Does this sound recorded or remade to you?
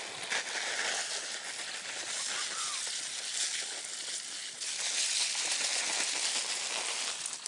recorded